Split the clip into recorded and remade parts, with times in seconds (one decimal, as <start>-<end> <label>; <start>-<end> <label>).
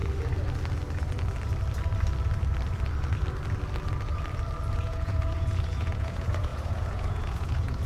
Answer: 0.0-4.7 recorded; 4.7-7.9 remade